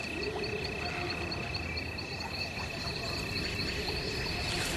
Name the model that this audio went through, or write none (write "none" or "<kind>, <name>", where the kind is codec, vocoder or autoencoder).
none